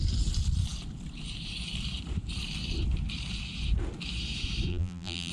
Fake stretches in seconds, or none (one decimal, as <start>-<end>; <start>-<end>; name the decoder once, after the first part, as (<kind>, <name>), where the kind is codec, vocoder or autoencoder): 4.7-5.3 (vocoder, BigVGAN v2)